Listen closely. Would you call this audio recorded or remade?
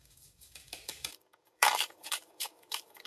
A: remade